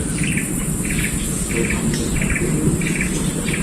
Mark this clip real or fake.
real